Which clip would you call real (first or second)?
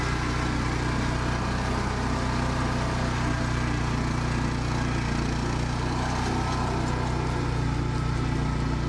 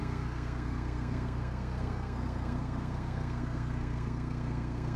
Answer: first